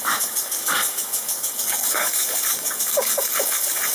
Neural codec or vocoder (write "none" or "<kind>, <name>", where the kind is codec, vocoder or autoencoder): codec, DAC